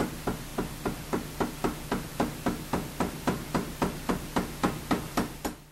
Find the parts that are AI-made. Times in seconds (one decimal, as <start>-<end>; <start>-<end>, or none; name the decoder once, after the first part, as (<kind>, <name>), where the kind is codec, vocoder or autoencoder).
none